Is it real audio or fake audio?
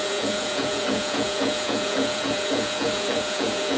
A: fake